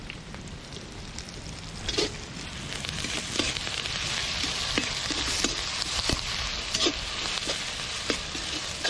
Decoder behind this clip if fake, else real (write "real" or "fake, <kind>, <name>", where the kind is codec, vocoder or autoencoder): real